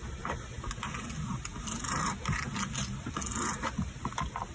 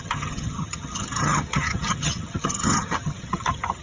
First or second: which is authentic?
first